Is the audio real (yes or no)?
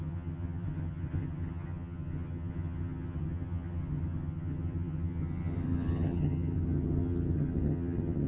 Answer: no